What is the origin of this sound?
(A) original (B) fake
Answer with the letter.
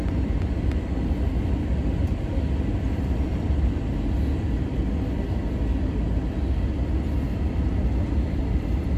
A